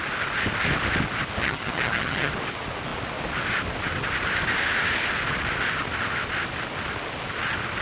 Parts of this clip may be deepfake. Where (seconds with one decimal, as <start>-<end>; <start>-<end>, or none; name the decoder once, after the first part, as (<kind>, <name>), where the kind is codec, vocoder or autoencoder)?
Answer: 1.4-2.3 (vocoder, HiFi-GAN)